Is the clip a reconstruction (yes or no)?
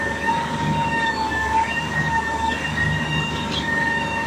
yes